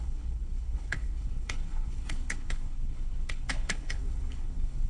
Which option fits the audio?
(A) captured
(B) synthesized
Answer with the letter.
B